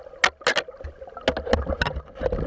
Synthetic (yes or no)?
no